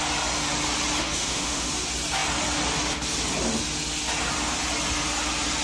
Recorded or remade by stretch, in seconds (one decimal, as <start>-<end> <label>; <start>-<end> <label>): 0.0-1.0 recorded; 1.0-1.7 remade; 1.7-5.6 recorded